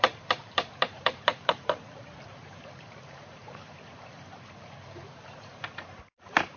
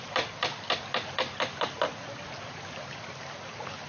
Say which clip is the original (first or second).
second